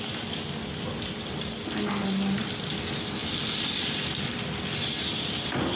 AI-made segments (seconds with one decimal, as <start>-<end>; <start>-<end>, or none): none

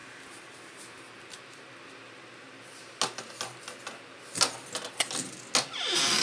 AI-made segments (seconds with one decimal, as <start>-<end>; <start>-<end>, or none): none